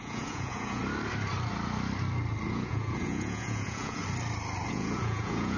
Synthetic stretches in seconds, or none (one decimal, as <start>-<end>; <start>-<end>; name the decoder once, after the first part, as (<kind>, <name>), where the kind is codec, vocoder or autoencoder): 0.0-0.8 (vocoder, Vocos); 2.5-4.0; 4.7-5.6